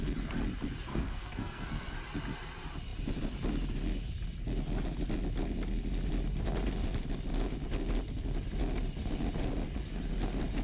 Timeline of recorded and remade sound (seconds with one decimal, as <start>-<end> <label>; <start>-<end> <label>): 0.0-0.9 recorded; 0.9-2.0 remade; 2.0-10.6 recorded